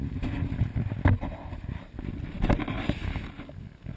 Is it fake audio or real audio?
real